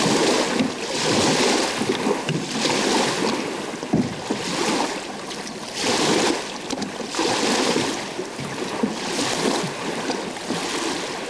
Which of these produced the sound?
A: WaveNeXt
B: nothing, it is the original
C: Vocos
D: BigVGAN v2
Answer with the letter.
B